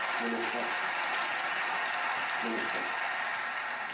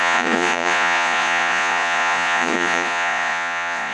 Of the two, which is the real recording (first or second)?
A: first